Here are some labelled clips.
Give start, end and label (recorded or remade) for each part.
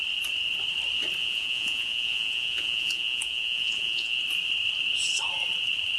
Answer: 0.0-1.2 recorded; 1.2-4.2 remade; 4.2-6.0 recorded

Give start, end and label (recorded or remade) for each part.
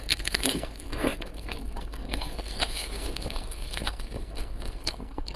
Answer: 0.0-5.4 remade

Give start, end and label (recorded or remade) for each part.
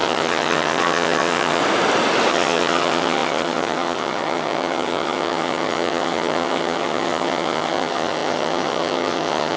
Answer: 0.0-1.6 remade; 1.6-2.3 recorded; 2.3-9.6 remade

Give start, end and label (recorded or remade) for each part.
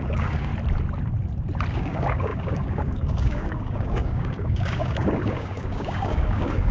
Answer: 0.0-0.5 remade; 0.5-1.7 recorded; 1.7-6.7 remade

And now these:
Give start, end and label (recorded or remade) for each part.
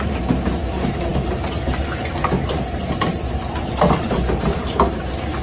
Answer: 0.0-5.4 recorded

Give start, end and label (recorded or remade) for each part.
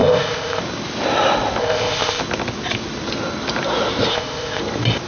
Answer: 0.0-0.6 remade; 0.6-1.6 recorded; 1.6-2.2 remade; 2.2-4.1 recorded; 4.1-4.6 remade; 4.6-5.1 recorded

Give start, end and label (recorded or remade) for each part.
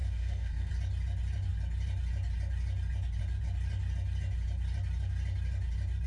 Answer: 0.0-0.7 remade; 0.7-6.1 recorded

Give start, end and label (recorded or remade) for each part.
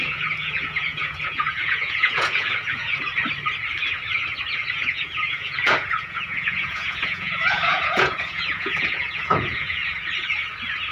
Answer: 0.0-3.1 remade; 3.1-4.7 recorded; 4.7-9.8 remade; 9.8-10.9 recorded